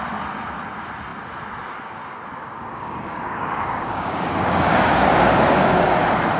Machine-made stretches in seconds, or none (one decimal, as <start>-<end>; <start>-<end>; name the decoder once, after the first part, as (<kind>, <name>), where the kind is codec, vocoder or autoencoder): 2.4-5.2 (codec, DAC)